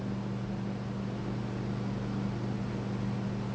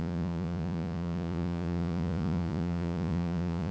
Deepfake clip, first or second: second